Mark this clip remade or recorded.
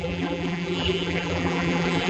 remade